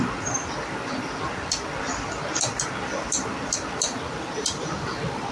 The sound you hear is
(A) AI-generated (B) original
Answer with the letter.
B